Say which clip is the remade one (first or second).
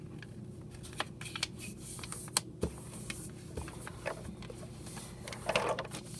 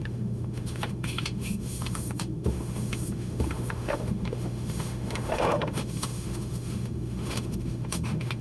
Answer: second